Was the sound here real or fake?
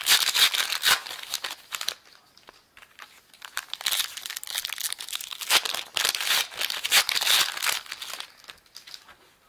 real